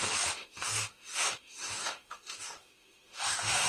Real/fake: fake